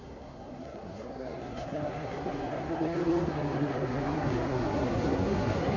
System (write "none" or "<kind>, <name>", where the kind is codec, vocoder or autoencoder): codec, SNAC